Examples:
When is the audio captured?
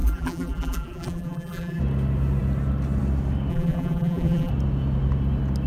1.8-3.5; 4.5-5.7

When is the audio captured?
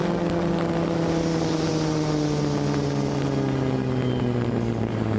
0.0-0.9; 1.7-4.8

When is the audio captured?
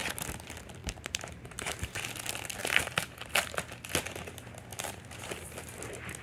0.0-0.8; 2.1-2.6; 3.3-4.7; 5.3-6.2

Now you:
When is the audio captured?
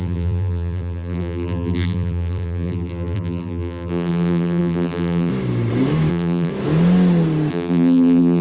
5.3-6.1; 6.5-7.5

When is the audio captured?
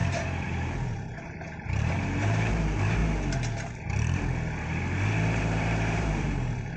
3.0-5.4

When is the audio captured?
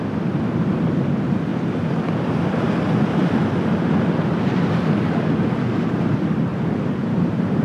0.0-6.5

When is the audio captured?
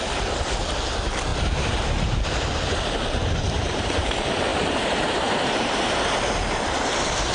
0.0-1.3; 2.2-3.2; 4.0-4.5; 6.3-7.3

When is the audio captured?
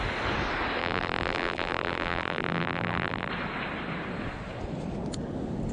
0.0-0.8; 3.3-5.7